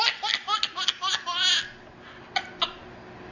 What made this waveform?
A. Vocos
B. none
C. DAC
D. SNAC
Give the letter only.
B